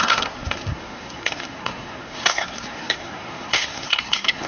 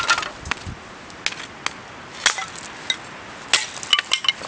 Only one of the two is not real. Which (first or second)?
first